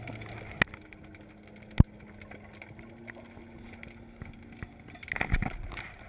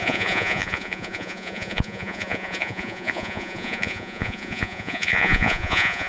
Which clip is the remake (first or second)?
second